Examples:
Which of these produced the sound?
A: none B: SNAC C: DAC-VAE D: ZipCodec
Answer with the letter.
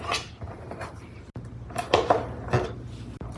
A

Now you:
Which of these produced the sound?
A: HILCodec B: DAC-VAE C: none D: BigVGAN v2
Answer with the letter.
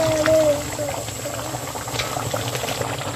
C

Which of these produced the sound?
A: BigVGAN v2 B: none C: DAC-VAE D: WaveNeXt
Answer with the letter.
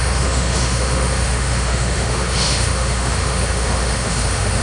C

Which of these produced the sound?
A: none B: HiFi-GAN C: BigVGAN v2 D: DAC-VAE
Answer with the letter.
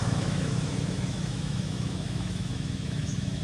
D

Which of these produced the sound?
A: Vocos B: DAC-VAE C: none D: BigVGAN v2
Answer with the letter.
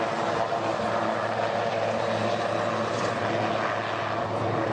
C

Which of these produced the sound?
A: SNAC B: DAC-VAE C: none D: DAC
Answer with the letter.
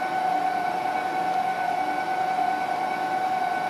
C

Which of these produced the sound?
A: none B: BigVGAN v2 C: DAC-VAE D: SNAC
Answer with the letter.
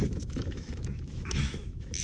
C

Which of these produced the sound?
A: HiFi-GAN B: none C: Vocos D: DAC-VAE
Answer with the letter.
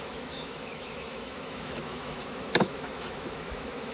D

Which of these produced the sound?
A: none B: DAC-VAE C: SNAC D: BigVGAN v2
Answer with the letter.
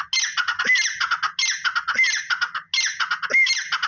A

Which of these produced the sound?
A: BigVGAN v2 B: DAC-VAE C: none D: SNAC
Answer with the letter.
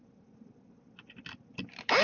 C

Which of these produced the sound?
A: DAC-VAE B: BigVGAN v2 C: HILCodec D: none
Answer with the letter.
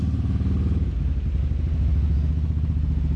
D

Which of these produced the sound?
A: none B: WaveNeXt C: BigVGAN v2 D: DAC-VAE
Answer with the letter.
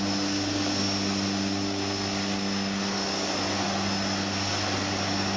A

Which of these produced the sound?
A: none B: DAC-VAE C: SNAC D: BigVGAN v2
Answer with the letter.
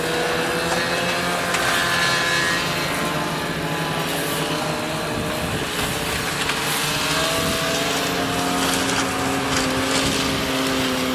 A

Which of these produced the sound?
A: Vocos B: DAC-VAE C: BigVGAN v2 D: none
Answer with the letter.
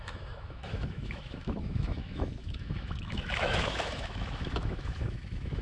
B